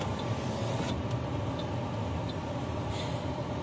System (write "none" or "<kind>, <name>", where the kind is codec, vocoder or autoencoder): none